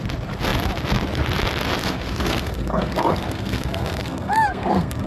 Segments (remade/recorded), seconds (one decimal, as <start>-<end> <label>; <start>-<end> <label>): 0.0-1.8 recorded; 1.8-5.1 remade

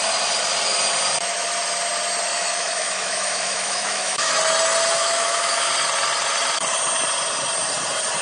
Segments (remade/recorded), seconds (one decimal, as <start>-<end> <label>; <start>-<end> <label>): 0.0-2.3 recorded; 2.3-4.3 remade; 4.3-5.0 recorded; 5.0-5.7 remade; 5.7-8.2 recorded